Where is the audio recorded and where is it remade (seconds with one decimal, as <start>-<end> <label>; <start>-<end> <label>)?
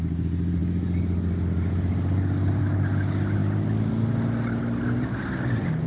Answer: 0.0-5.9 recorded